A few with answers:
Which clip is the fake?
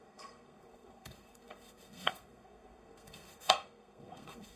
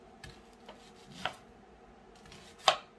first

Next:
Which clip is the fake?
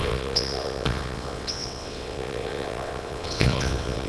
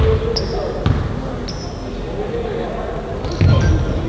first